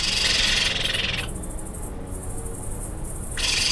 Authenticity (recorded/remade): recorded